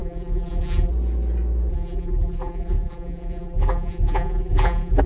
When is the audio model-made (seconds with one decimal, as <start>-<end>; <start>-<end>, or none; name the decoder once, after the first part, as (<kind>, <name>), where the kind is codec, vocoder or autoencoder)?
0.0-0.9 (vocoder, BigVGAN v2); 1.7-5.1